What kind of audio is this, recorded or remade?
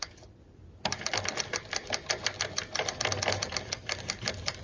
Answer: recorded